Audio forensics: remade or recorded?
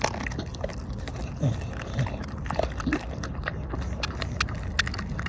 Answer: recorded